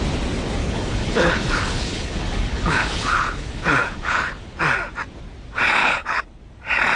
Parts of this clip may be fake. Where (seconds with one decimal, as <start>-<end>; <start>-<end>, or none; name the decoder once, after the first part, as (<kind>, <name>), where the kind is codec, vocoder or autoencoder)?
0.6-4.6 (codec, HILCodec); 5.8-6.4